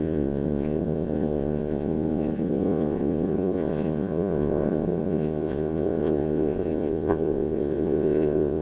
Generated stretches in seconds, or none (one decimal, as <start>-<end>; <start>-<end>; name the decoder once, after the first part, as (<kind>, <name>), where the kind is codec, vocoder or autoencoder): 0.0-8.6 (vocoder, Vocos)